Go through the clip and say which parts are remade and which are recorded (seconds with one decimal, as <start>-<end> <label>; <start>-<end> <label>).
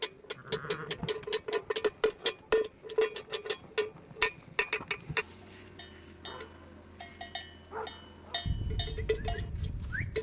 0.0-5.3 recorded; 5.3-5.8 remade; 5.8-10.2 recorded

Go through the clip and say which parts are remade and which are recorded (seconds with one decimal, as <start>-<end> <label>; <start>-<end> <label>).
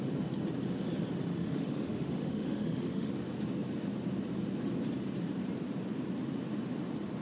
0.0-1.3 recorded; 1.3-3.1 remade; 3.1-7.2 recorded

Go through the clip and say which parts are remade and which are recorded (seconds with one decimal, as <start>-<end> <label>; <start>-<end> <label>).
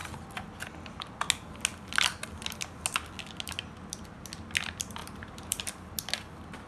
0.0-5.0 recorded; 5.0-5.6 remade; 5.6-6.7 recorded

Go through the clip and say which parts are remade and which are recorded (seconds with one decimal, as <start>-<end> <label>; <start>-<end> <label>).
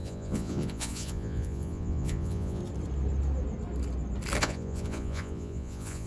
0.0-2.6 remade; 2.6-4.4 recorded; 4.4-6.1 remade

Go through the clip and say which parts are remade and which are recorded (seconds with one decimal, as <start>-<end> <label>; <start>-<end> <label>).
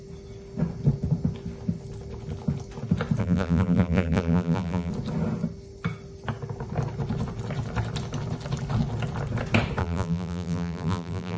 0.0-3.2 recorded; 3.2-4.9 remade; 4.9-9.8 recorded; 9.8-11.4 remade